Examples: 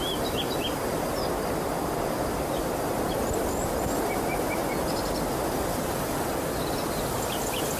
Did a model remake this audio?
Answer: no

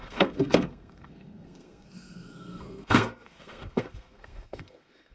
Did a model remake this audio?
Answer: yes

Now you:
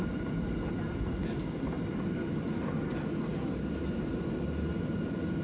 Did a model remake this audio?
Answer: no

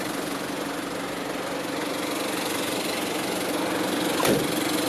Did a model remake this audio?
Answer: no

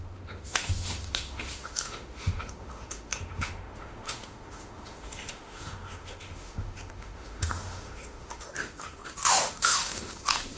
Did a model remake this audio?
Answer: yes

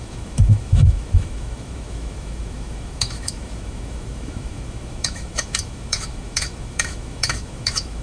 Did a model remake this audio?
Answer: yes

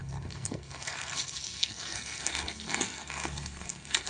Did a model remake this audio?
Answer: yes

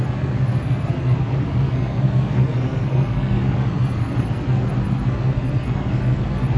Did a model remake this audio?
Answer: yes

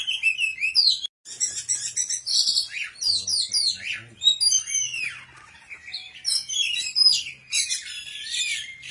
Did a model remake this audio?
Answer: no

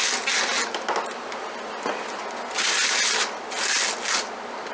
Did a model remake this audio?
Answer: no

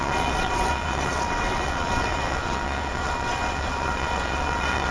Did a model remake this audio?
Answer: yes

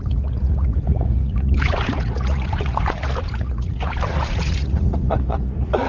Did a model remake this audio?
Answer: yes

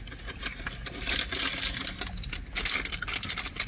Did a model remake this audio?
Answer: no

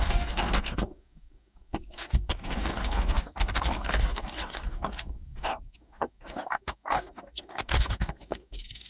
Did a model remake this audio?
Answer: yes